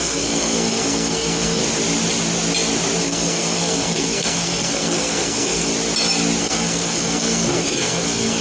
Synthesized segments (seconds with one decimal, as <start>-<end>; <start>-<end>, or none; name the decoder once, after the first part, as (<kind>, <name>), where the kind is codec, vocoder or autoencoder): 0.0-1.6 (codec, SNAC); 3.0-5.7; 6.4-8.4